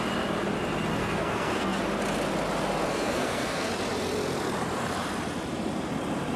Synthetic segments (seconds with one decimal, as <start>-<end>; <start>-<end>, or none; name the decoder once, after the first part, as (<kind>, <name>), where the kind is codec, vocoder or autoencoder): 1.0-1.8 (codec, SNAC); 2.9-3.7